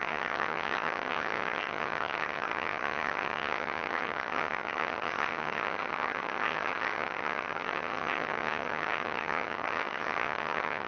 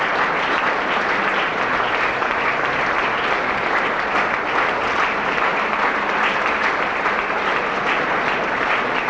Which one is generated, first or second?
first